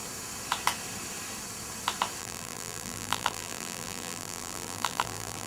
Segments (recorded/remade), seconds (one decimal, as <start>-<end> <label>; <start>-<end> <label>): 0.0-2.2 recorded; 2.2-5.5 remade